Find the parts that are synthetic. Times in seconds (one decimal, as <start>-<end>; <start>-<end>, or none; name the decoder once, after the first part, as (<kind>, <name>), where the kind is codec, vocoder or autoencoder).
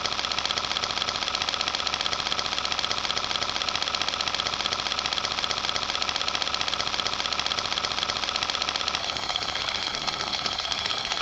9.0-11.2 (codec, SNAC)